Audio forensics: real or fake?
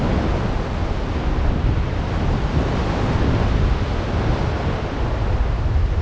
real